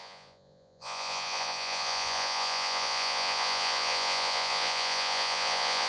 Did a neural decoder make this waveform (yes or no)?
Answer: yes